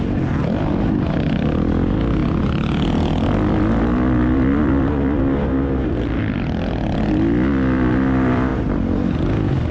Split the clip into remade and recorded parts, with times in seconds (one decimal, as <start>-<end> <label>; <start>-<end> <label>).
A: 0.0-9.7 recorded